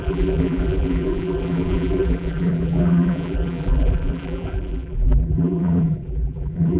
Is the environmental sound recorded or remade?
remade